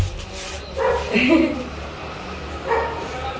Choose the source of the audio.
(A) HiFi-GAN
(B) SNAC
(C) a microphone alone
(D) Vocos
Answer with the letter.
C